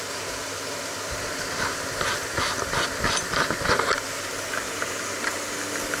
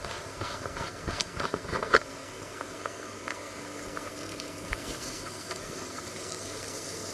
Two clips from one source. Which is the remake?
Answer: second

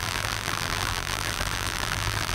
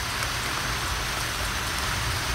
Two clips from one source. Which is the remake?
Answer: first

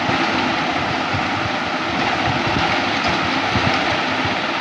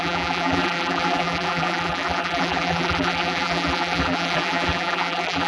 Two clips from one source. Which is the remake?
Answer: second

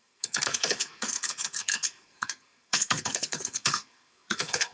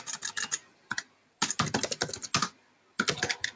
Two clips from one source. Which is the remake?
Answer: first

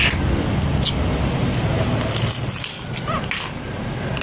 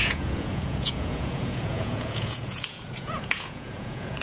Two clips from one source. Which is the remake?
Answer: second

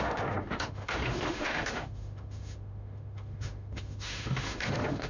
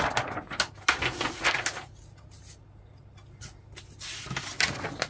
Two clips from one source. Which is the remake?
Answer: first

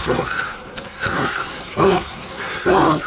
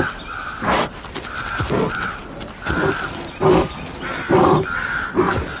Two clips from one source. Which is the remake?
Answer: first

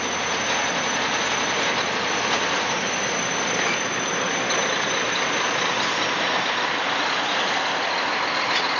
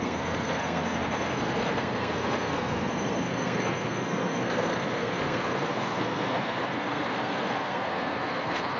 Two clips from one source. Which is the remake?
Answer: second